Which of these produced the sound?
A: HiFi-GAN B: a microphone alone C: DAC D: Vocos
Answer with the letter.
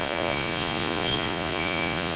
D